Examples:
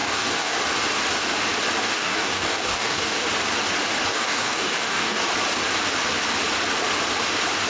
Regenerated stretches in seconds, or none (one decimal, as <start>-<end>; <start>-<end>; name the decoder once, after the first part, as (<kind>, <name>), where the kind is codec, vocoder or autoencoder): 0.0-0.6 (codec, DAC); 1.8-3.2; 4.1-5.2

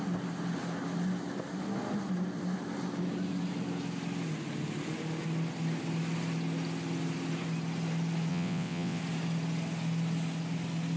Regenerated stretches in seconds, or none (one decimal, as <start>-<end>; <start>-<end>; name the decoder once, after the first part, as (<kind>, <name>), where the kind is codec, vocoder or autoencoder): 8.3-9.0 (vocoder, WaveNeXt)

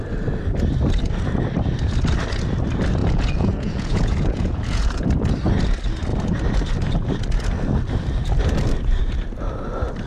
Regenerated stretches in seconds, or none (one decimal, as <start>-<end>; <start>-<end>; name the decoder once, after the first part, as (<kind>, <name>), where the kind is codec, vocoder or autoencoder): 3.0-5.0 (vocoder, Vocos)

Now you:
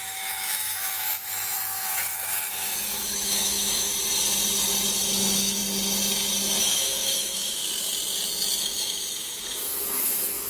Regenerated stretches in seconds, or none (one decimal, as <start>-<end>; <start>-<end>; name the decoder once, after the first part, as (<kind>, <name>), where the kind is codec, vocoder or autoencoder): 0.0-3.9 (autoencoder, DAC-VAE); 5.0-5.6; 6.6-7.6; 8.6-10.5

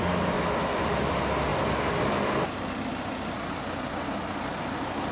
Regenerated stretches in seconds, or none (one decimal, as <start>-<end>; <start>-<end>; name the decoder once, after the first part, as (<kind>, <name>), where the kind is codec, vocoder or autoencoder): none

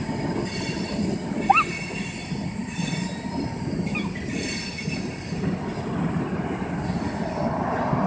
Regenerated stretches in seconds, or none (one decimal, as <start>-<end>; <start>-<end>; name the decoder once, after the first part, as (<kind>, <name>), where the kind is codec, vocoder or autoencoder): none